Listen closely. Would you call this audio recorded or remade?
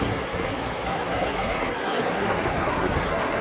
remade